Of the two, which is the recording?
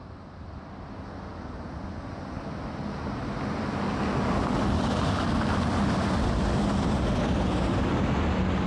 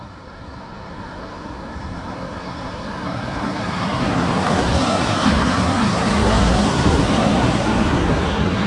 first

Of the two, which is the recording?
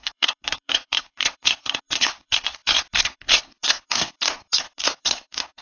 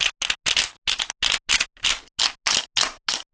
second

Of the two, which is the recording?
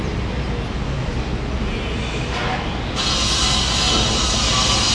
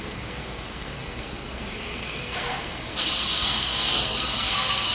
first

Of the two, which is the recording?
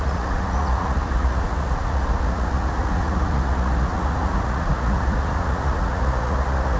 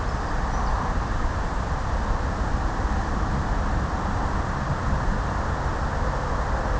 second